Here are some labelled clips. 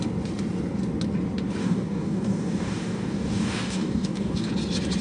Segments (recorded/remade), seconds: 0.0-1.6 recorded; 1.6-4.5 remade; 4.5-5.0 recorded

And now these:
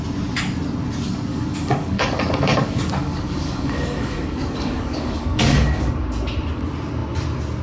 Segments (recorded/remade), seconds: 0.0-1.3 recorded; 1.3-5.9 remade; 5.9-7.6 recorded

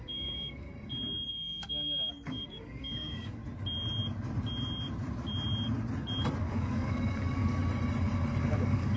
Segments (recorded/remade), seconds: 0.0-0.7 remade; 0.7-1.3 recorded; 1.3-3.4 remade; 3.4-6.4 recorded; 6.4-7.6 remade; 7.6-8.4 recorded; 8.4-9.0 remade

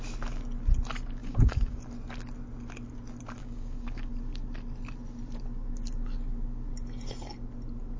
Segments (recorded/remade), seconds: 0.0-1.2 recorded; 1.2-1.8 remade; 1.8-3.4 recorded; 3.4-4.1 remade; 4.1-8.0 recorded

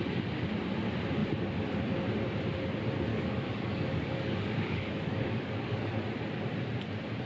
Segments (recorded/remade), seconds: 0.0-3.1 recorded; 3.1-6.0 remade; 6.0-7.3 recorded

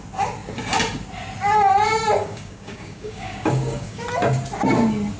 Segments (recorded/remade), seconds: 0.0-2.2 recorded; 2.2-4.0 remade; 4.0-5.2 recorded